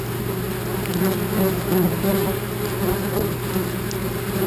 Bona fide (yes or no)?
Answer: yes